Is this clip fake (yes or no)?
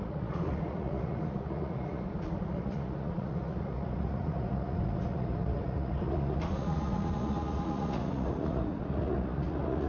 yes